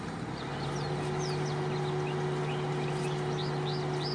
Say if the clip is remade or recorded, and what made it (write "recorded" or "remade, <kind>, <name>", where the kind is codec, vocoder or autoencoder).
recorded